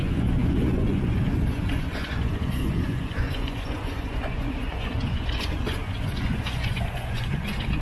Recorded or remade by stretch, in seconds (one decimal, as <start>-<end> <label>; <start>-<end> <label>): 0.0-7.8 remade